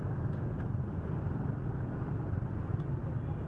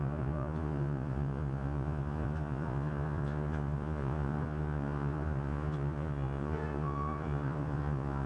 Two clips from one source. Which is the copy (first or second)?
second